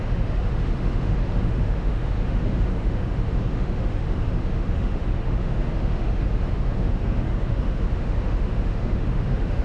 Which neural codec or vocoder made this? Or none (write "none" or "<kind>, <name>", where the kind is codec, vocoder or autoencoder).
autoencoder, DAC-VAE